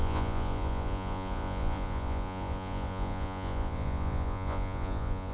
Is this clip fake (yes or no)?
yes